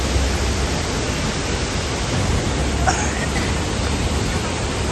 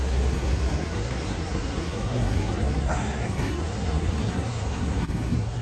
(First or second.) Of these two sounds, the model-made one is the second